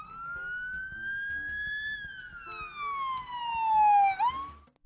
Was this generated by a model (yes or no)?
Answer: no